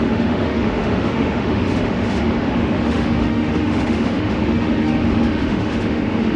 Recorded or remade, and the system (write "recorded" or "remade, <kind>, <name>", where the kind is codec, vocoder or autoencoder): remade, autoencoder, DAC-VAE